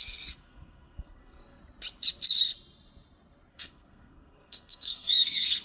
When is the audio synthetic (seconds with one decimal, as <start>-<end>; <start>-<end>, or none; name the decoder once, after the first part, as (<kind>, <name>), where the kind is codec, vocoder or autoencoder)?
0.0-1.6 (codec, SNAC); 3.5-5.6